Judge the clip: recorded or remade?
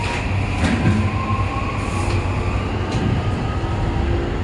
recorded